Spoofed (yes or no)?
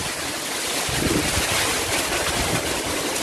no